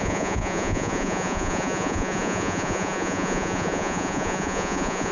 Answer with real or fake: fake